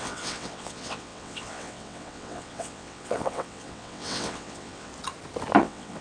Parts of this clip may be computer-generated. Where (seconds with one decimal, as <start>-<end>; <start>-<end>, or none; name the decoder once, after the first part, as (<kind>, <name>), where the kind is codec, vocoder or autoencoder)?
0.0-4.9 (vocoder, WaveNeXt); 5.6-6.0